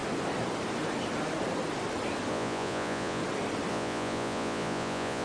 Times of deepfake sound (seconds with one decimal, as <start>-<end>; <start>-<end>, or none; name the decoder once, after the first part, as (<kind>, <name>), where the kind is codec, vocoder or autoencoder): 2.3-3.2 (vocoder, Vocos); 3.7-5.2